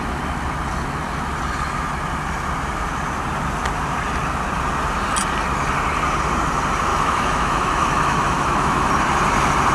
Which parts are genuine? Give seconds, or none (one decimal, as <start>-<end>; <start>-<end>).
0.0-6.9; 8.9-9.7

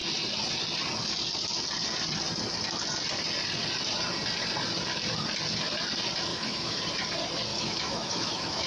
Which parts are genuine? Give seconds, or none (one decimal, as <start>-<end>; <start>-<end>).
0.0-6.3; 6.8-7.5

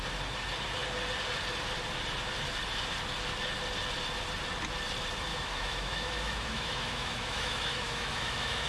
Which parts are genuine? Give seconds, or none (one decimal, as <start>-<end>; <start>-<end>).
0.0-5.3

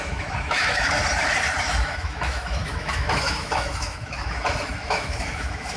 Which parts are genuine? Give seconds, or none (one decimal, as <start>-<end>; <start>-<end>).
1.0-1.6

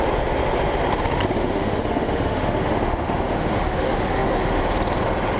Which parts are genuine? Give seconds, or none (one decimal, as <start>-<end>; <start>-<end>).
0.0-1.4; 4.6-5.4

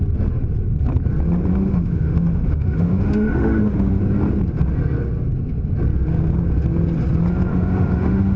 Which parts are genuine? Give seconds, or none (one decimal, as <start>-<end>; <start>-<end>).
0.0-1.5; 4.0-7.5

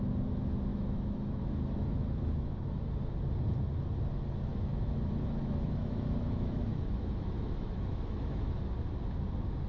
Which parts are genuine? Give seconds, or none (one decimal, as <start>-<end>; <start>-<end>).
0.0-0.7; 2.8-4.5; 8.6-9.7

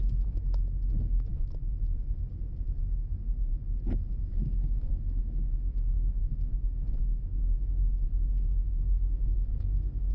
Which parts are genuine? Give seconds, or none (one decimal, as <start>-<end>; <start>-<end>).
1.6-4.2